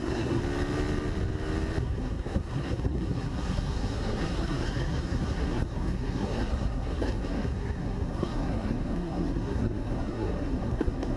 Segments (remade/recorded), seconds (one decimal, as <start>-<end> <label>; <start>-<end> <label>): 0.0-0.4 remade; 0.4-1.8 recorded; 1.8-11.2 remade